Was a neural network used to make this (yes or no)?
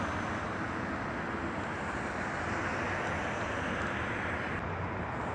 no